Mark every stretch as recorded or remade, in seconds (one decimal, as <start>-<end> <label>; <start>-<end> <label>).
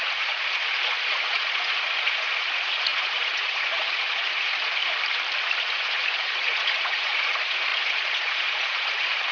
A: 0.0-4.8 remade; 4.8-5.6 recorded; 5.6-9.3 remade